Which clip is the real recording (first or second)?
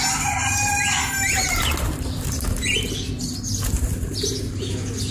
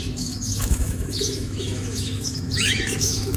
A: first